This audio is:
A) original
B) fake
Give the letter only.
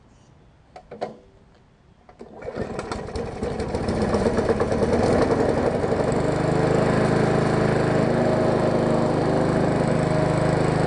A